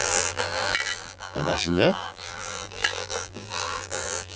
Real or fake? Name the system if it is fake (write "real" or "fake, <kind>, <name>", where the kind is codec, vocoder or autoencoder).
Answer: fake, vocoder, BigVGAN v2